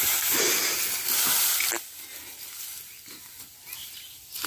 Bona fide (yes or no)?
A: yes